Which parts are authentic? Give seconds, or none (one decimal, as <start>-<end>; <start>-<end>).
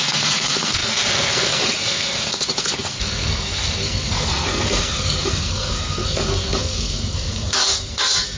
none